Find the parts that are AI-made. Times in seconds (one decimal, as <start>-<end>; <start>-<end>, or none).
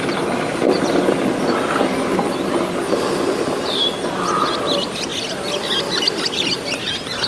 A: none